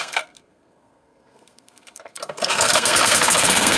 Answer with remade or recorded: remade